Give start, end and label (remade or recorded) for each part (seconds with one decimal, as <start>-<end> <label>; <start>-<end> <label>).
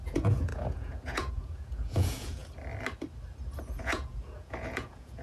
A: 0.0-2.4 remade; 2.4-3.6 recorded; 3.6-5.2 remade